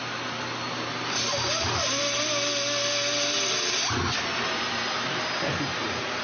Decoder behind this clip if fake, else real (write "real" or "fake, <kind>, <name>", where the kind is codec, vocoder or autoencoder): real